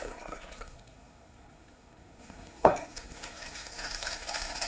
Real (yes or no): no